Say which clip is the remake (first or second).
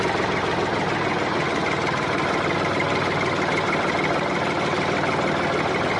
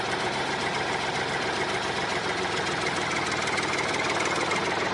second